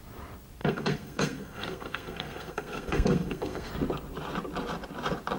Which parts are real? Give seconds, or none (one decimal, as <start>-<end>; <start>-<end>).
0.0-0.6; 3.7-5.4